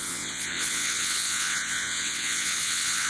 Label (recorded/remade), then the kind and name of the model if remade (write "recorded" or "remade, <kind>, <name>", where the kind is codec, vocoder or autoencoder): remade, vocoder, WaveNeXt